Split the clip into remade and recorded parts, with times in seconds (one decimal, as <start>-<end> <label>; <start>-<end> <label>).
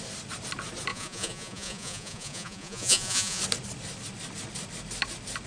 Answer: 0.0-0.9 recorded; 0.9-3.4 remade; 3.4-5.5 recorded